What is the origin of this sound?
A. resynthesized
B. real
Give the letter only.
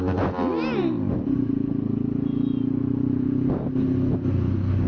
B